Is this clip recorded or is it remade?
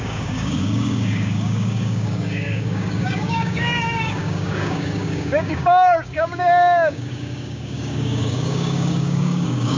remade